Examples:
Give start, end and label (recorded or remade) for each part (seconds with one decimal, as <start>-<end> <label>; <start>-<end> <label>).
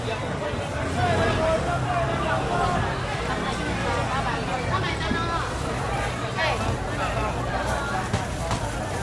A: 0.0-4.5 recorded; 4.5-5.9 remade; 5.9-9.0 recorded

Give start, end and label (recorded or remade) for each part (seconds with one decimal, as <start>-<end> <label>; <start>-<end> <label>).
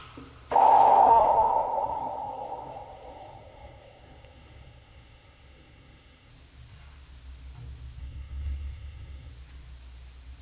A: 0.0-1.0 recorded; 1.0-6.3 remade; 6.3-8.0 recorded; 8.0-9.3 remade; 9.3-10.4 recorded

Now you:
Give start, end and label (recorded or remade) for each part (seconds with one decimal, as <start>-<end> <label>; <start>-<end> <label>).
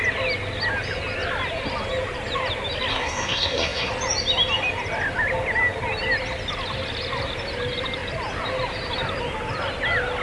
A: 0.0-2.9 recorded; 2.9-3.9 remade; 3.9-10.2 recorded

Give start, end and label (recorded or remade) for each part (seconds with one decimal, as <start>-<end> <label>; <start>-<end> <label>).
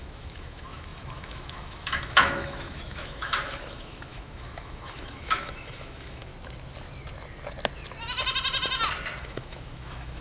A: 0.0-6.3 remade; 6.3-9.2 recorded; 9.2-10.2 remade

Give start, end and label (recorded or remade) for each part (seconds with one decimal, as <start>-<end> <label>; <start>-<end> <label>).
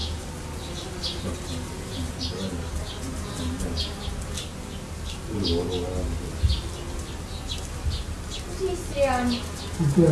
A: 0.0-10.1 recorded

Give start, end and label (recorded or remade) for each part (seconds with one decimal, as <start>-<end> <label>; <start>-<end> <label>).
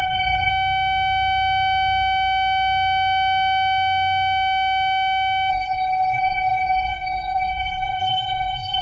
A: 0.0-0.5 remade; 0.5-5.5 recorded; 5.5-8.8 remade